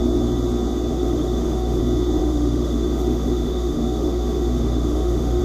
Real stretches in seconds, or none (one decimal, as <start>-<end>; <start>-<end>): 0.0-0.9; 1.8-2.2